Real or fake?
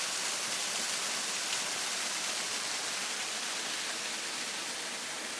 real